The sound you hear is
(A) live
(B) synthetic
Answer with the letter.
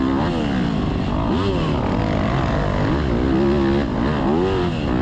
A